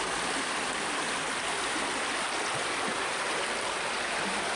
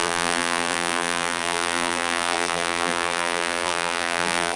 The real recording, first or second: first